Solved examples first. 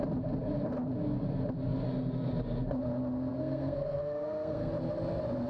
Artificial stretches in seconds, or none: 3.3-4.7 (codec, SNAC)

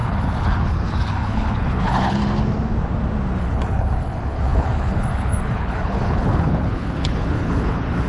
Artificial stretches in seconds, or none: 0.0-2.2 (codec, HILCodec); 3.4-8.1

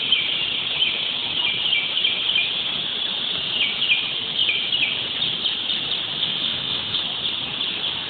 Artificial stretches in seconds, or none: 6.2-7.0 (autoencoder, DAC-VAE)

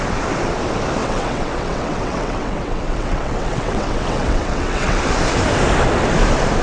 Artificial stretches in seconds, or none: 1.0-5.0 (vocoder, WaveNeXt)

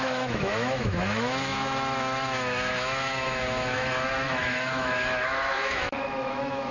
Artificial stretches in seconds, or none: 0.0-6.7 (autoencoder, DAC-VAE)

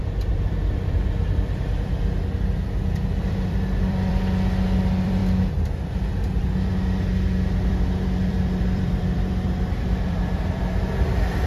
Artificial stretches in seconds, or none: 0.0-1.9 (vocoder, BigVGAN v2); 3.2-5.2; 7.7-11.5